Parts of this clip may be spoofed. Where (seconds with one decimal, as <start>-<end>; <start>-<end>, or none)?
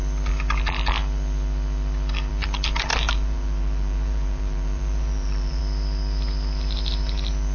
2.9-5.6